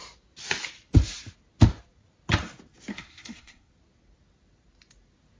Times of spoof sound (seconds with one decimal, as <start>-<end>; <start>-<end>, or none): 2.9-3.7